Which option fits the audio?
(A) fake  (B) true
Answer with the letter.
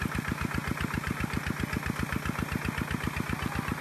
B